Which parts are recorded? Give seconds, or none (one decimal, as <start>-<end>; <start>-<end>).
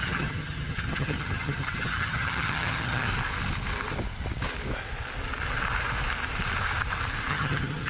3.1-7.3